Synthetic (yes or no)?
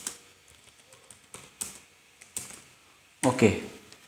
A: no